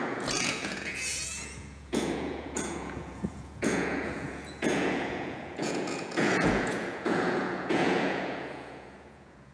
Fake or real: fake